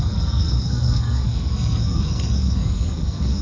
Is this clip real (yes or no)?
no